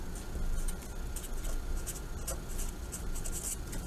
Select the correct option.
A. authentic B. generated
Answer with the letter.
A